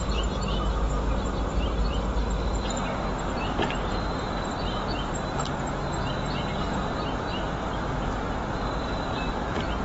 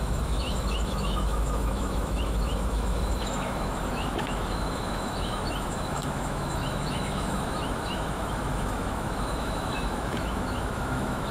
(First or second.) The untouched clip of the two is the first